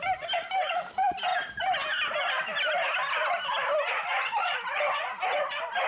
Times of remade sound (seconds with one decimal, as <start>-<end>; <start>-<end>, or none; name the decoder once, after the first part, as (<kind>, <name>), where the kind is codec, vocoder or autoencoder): none

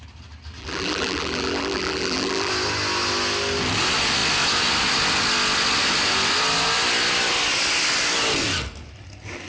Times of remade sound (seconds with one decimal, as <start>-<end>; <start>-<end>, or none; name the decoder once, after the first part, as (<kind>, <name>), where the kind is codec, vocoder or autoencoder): 0.6-2.5 (vocoder, BigVGAN v2)

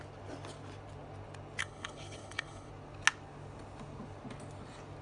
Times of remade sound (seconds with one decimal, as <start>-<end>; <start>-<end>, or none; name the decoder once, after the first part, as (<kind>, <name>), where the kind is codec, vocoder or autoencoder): 1.6-2.7 (codec, HILCodec)

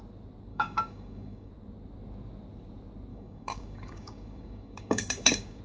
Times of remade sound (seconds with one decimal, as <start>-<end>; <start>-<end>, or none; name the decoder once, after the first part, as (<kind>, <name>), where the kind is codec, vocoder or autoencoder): 0.5-1.5 (codec, DAC); 3.1-5.6

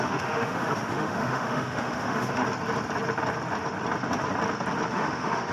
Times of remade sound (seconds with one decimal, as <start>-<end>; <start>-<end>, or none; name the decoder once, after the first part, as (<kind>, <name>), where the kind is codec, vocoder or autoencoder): 0.0-2.4 (autoencoder, DAC-VAE); 4.9-5.5

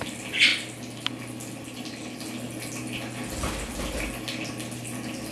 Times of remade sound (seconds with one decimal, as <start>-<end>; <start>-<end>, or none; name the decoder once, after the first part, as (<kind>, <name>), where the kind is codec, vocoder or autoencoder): none

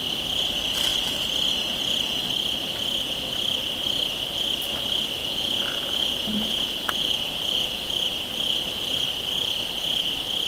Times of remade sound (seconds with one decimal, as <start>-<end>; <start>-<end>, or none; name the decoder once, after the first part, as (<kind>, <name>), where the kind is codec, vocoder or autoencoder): 5.2-7.9 (vocoder, Vocos)